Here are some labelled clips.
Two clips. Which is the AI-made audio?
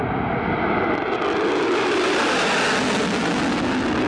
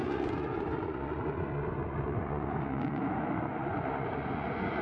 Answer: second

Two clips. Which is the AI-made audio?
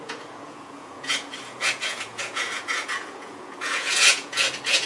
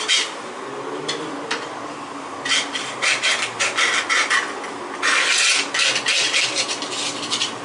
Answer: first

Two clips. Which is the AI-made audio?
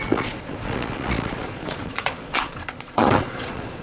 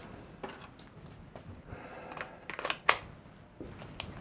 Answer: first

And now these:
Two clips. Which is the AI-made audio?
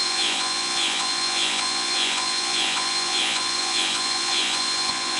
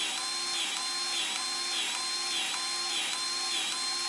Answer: first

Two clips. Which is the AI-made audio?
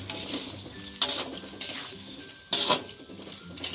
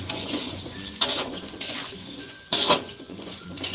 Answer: second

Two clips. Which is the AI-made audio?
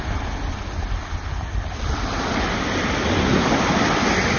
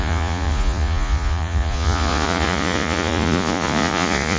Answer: second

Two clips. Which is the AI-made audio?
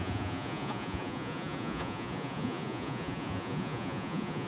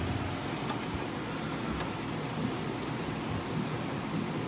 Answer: first